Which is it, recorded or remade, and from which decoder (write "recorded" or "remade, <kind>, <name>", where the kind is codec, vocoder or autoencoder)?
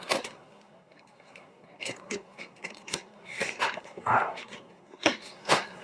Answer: remade, codec, SNAC